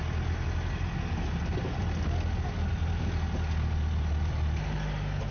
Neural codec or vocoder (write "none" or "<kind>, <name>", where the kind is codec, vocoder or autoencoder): none